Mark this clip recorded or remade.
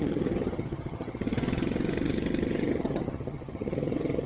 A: remade